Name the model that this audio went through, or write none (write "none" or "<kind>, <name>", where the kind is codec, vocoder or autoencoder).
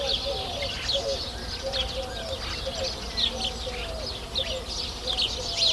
none